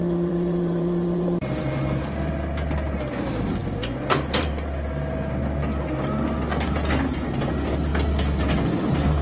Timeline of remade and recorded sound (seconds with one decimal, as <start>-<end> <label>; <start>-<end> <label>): 0.0-1.6 remade; 1.6-9.2 recorded